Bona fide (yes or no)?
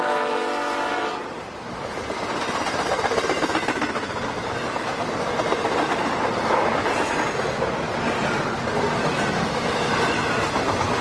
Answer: yes